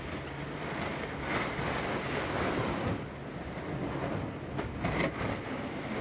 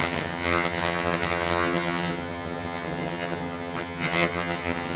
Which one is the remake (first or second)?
second